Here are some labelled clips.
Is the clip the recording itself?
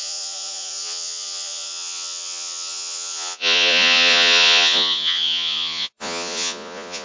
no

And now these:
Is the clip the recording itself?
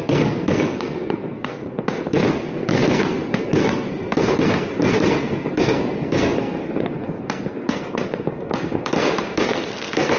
no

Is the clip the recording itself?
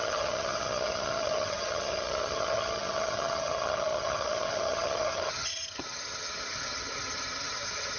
no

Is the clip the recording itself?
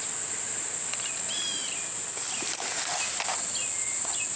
yes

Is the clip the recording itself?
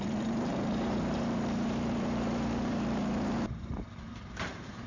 no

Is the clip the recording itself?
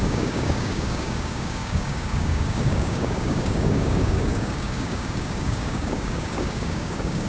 no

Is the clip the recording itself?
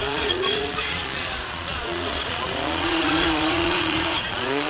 no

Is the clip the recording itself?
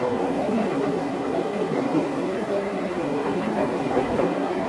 no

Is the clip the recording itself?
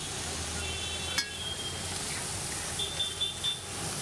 yes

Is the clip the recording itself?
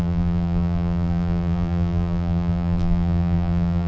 no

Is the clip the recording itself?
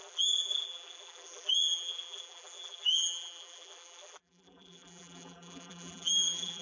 no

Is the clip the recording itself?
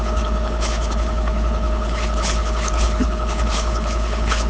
no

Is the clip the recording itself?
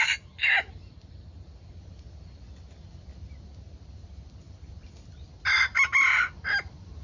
yes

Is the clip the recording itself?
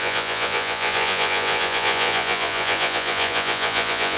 no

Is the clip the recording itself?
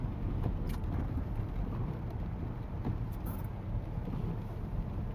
yes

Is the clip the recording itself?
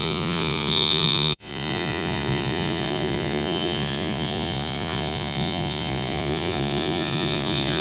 no